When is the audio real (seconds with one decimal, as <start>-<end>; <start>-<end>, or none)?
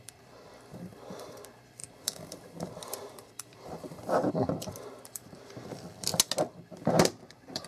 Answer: 6.1-7.0